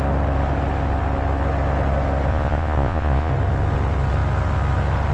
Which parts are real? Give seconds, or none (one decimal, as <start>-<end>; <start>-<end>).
0.0-2.3; 3.3-5.1